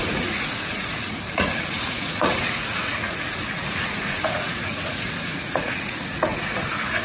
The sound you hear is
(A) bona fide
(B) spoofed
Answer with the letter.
B